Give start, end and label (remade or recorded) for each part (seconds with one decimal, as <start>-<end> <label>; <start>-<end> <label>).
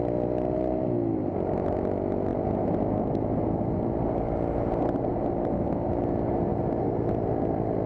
0.0-7.9 recorded